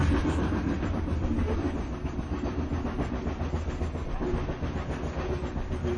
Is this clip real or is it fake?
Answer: real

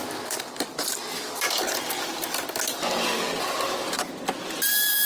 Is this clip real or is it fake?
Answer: real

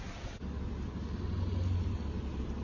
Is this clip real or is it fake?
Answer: real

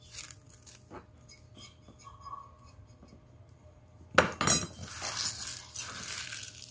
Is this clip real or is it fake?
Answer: real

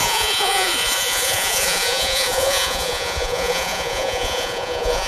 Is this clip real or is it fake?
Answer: fake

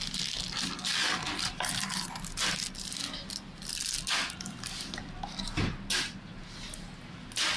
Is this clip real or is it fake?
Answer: real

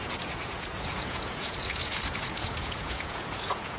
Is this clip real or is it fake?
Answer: fake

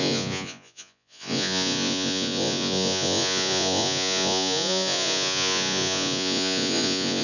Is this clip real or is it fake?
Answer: fake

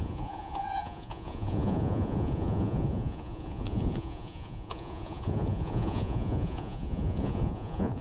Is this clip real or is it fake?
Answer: fake